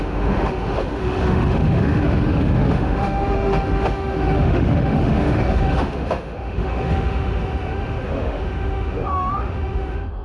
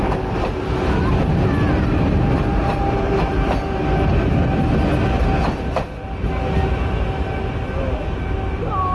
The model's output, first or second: first